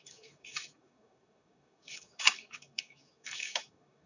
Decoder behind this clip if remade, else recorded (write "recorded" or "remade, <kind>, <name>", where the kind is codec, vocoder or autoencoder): remade, autoencoder, DAC-VAE